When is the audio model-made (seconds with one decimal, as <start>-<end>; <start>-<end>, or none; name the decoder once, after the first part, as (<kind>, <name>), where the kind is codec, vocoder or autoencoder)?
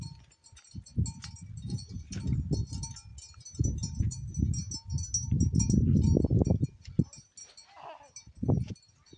none